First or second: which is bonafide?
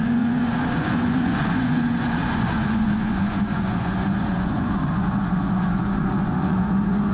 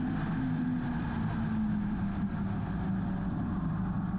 second